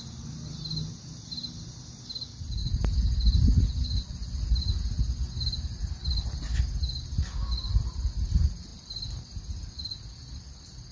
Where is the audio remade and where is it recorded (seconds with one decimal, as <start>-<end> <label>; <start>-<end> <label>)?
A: 0.0-10.9 recorded